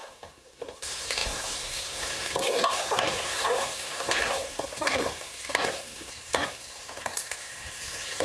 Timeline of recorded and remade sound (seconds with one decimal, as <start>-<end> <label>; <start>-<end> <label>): 0.0-8.2 remade